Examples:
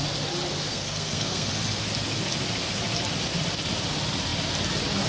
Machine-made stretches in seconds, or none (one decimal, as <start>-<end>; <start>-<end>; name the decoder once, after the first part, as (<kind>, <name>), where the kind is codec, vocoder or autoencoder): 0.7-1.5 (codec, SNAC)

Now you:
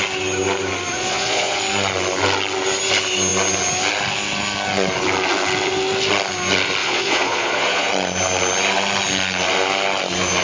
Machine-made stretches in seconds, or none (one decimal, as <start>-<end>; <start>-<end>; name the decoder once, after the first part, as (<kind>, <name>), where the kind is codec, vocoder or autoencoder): 0.9-1.6 (vocoder, Vocos); 6.8-7.9

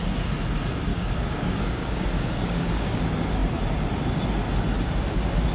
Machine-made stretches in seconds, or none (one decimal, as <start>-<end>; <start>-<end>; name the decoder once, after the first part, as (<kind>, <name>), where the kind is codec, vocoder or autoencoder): 0.9-3.0 (codec, DAC)

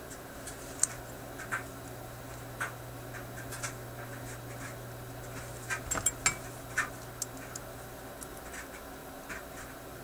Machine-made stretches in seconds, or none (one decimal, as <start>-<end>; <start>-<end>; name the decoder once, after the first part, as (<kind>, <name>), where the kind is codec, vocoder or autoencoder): none

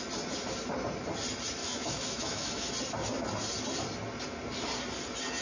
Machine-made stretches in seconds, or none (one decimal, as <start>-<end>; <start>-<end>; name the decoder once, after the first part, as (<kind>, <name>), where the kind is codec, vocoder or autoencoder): 1.6-2.7 (autoencoder, DAC-VAE)

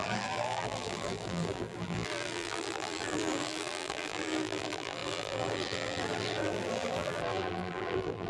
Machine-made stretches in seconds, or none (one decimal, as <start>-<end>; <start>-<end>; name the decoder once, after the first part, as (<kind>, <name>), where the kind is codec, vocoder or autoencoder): 0.0-8.3 (vocoder, BigVGAN v2)

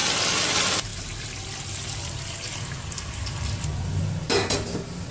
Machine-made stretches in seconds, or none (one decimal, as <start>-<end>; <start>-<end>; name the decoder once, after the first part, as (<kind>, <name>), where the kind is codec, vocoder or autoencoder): none